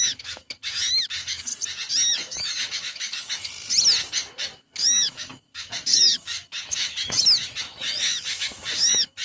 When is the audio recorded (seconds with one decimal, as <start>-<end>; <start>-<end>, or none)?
1.5-2.1; 3.5-4.2